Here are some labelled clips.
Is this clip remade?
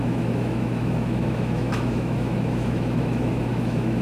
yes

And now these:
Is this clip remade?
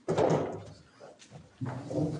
no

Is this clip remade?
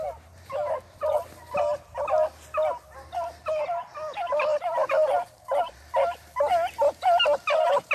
no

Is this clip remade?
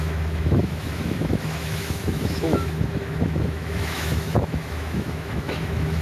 yes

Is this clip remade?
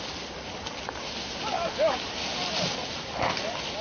no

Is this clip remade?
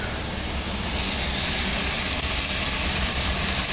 no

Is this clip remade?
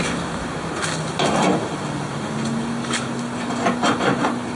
no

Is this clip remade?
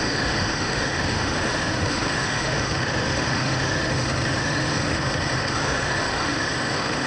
yes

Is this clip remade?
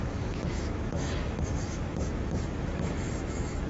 yes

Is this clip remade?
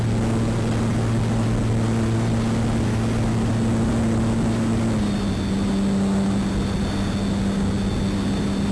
no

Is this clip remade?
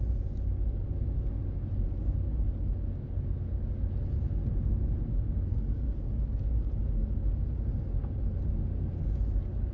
no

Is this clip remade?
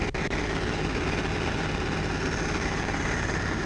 no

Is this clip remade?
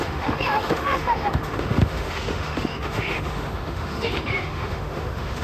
yes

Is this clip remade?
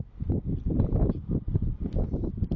no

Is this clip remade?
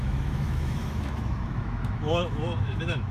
yes